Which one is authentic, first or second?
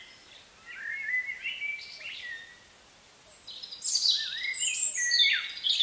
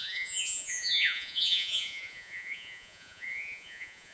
first